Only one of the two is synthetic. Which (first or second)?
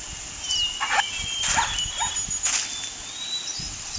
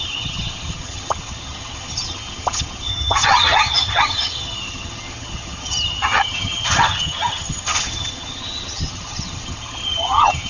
second